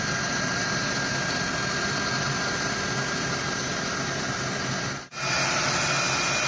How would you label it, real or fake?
fake